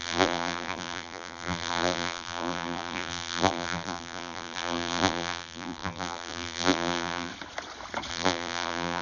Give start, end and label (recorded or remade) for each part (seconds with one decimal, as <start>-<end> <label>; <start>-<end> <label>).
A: 0.0-7.3 remade; 7.3-8.1 recorded; 8.1-9.0 remade